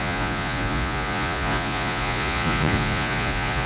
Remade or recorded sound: remade